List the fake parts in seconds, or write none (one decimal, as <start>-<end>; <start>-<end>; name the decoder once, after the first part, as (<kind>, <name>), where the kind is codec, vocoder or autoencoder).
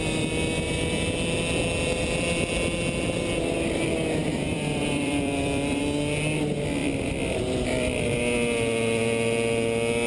4.2-5.8 (vocoder, BigVGAN v2); 6.8-8.2